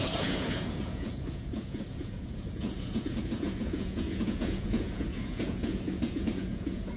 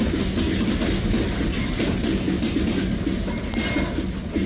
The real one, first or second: second